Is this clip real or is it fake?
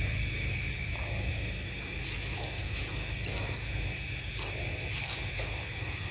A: real